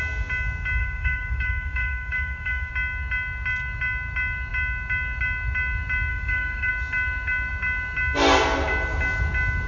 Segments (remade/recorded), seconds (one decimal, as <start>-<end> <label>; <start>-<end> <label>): 0.0-0.8 recorded; 0.8-2.7 remade; 2.7-6.1 recorded; 6.1-6.7 remade; 6.7-9.7 recorded